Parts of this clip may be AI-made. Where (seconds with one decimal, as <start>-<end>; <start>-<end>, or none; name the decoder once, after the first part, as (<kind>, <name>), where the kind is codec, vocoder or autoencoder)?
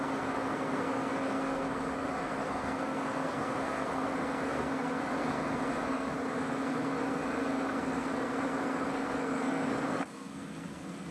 0.0-11.1 (codec, SNAC)